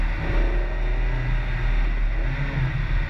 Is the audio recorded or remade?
recorded